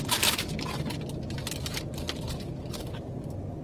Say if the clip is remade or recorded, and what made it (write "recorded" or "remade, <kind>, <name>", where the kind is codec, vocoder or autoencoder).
recorded